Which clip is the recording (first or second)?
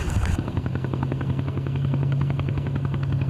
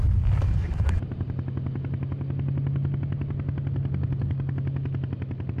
second